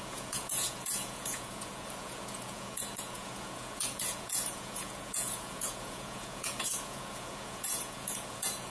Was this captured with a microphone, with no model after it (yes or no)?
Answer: no